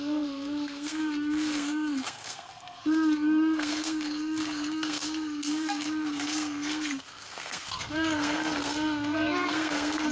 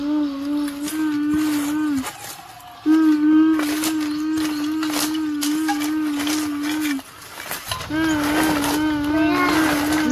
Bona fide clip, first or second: second